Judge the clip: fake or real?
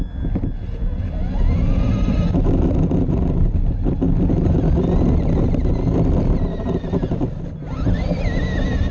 real